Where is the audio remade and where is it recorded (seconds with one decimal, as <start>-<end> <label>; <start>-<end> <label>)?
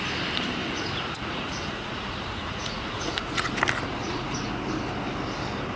0.0-0.6 recorded; 0.6-3.5 remade; 3.5-4.0 recorded; 4.0-4.5 remade; 4.5-5.8 recorded